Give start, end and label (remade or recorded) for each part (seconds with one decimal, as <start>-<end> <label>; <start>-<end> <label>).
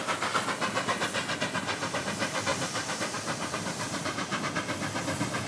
0.0-2.5 recorded; 2.5-4.4 remade; 4.4-5.5 recorded